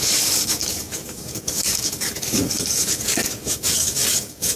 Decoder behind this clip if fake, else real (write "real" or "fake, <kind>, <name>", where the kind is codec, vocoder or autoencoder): fake, codec, DAC